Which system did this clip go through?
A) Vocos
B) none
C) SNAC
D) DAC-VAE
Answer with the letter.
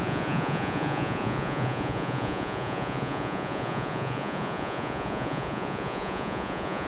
A